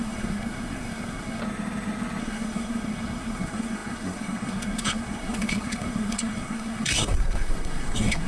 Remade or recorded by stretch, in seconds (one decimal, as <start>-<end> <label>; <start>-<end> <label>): 0.0-1.4 remade; 1.4-2.2 recorded; 2.2-8.3 remade